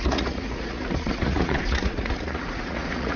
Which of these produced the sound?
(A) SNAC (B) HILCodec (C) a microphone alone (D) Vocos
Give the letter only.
D